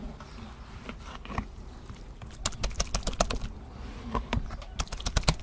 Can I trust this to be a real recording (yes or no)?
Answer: yes